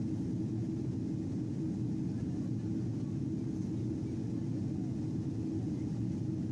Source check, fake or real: real